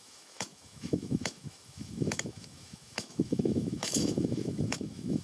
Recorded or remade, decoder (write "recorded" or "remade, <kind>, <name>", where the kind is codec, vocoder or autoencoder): remade, autoencoder, DAC-VAE